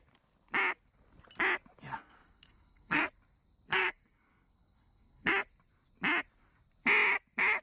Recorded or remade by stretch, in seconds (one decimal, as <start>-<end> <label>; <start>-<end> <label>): 0.0-1.9 recorded; 1.9-3.0 remade; 3.0-3.7 recorded; 3.7-5.3 remade; 5.3-7.6 recorded